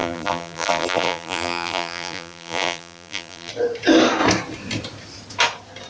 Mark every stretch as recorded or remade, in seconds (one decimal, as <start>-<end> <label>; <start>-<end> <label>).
0.0-3.5 remade; 3.5-5.9 recorded